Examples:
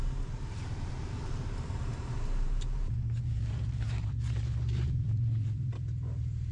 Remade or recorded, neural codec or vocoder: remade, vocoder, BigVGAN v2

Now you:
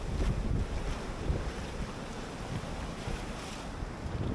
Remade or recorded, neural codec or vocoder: recorded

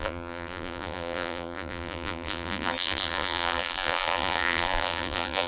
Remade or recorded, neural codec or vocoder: remade, vocoder, BigVGAN v2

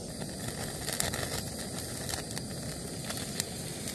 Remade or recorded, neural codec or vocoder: recorded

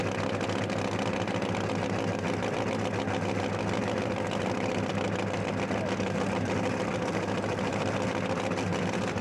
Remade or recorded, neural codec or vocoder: recorded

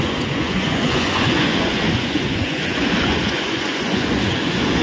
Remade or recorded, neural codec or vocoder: remade, vocoder, Vocos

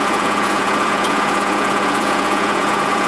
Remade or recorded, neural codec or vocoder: remade, vocoder, Vocos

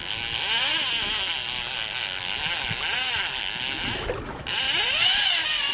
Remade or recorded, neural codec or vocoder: recorded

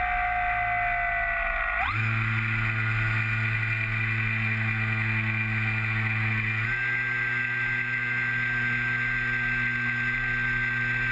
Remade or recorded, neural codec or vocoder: recorded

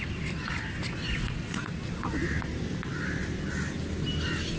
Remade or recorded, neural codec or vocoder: recorded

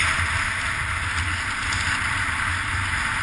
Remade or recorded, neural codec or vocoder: recorded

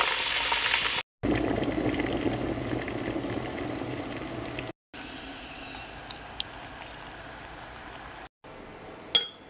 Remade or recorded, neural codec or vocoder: recorded